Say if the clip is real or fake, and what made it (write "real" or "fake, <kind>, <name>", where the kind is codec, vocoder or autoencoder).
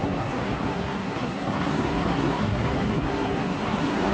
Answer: fake, codec, SNAC